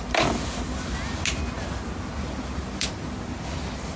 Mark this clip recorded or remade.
recorded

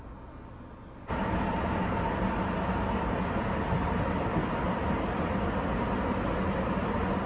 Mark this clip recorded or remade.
recorded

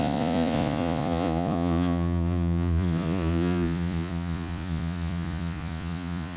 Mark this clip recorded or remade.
remade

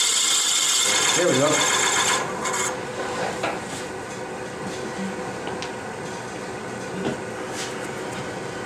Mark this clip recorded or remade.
recorded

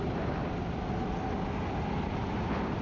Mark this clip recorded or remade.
recorded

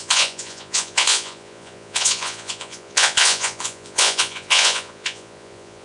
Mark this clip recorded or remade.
remade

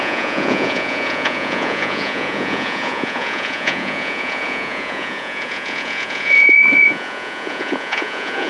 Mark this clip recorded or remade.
remade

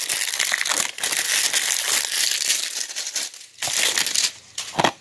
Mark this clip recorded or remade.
recorded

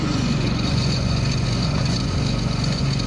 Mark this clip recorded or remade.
remade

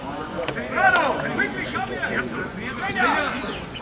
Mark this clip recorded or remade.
remade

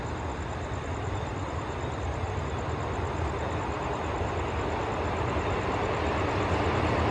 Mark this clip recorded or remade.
recorded